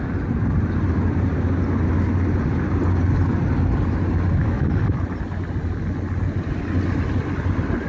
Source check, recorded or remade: recorded